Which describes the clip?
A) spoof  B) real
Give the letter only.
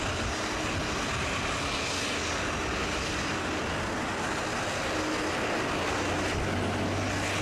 B